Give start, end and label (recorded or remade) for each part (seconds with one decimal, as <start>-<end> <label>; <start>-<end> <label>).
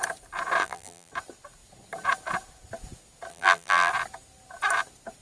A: 0.0-0.6 recorded; 0.6-1.1 remade; 1.1-3.3 recorded; 3.3-3.9 remade; 3.9-5.2 recorded